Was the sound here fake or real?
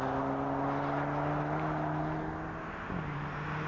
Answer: real